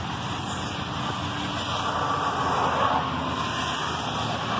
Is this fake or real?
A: real